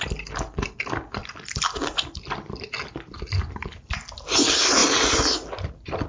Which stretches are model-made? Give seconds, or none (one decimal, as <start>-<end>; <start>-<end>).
1.2-3.2; 4.8-6.1